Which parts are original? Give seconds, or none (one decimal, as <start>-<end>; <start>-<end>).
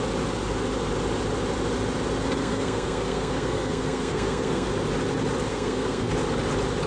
0.0-2.4; 4.7-5.5; 6.1-6.9